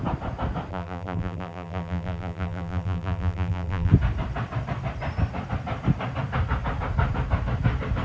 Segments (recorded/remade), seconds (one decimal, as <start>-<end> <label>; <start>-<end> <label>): 0.0-0.7 recorded; 0.7-3.9 remade; 3.9-8.0 recorded